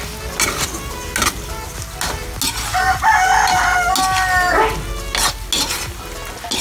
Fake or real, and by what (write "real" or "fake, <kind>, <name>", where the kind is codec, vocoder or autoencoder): real